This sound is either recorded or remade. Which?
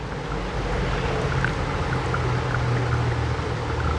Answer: recorded